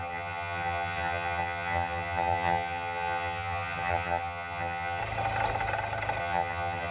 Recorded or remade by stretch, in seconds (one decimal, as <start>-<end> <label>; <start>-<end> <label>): 0.0-5.0 remade; 5.0-6.2 recorded; 6.2-6.9 remade